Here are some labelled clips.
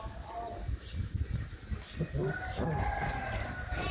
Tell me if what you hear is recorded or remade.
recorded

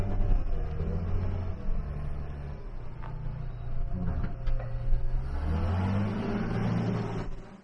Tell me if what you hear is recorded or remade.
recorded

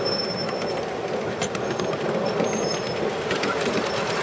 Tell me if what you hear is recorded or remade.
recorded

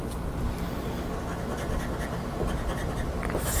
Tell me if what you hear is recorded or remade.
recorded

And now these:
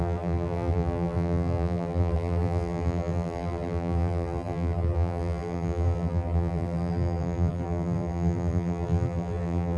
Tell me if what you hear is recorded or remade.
remade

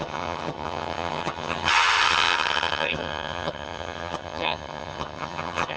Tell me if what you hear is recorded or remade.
remade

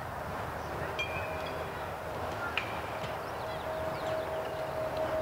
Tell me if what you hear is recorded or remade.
recorded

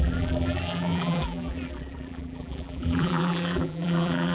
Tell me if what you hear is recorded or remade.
remade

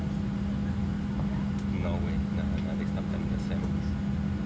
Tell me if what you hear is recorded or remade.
recorded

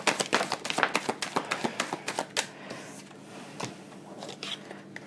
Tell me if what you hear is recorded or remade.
recorded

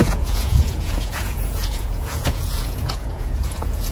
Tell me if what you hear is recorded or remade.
remade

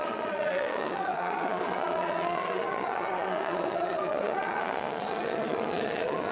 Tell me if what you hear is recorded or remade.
remade